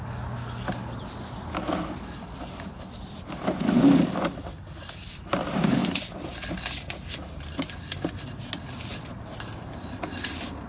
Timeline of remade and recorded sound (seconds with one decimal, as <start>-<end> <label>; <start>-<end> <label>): 0.0-10.7 recorded